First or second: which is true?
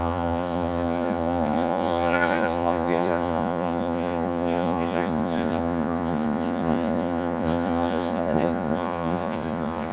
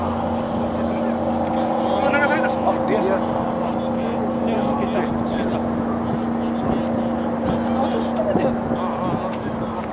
second